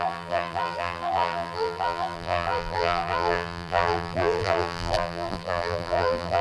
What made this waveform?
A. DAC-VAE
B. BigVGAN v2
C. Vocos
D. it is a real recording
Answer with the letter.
B